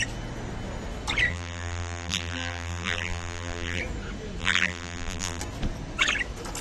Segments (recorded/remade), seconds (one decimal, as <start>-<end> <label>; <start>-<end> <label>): 0.0-1.3 recorded; 1.3-3.8 remade; 3.8-4.4 recorded; 4.4-5.4 remade; 5.4-6.6 recorded